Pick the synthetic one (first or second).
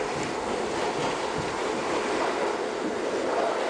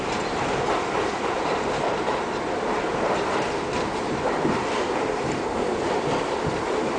second